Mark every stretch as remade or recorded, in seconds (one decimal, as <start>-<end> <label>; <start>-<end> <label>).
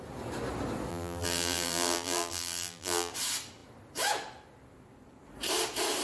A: 0.0-0.9 recorded; 0.9-3.1 remade; 3.1-6.0 recorded